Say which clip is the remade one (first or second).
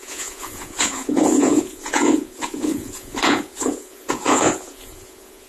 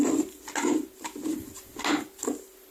first